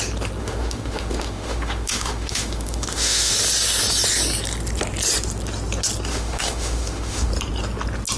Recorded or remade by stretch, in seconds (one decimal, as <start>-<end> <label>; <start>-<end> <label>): 0.0-0.4 recorded; 0.4-3.3 remade; 3.3-6.1 recorded; 6.1-7.3 remade; 7.3-8.2 recorded